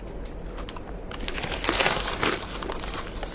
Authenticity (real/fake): real